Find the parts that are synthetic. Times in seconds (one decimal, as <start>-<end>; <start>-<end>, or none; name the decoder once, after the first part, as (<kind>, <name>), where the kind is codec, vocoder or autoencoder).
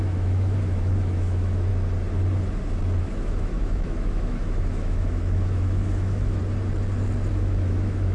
0.0-1.7 (autoencoder, DAC-VAE); 3.0-6.4; 7.3-8.1